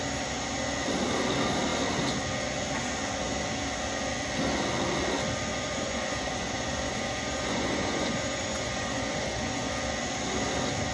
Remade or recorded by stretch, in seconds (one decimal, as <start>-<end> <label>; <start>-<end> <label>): 0.0-5.5 recorded; 5.5-9.7 remade; 9.7-10.9 recorded